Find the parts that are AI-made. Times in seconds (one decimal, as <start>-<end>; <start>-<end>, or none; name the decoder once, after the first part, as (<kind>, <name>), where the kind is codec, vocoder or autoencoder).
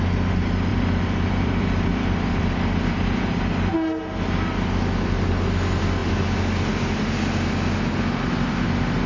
0.7-3.7 (vocoder, BigVGAN v2)